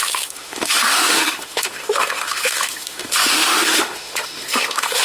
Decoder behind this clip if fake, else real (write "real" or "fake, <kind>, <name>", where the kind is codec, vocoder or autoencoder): fake, autoencoder, DAC-VAE